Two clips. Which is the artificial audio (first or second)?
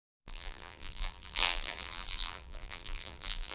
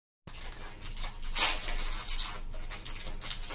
first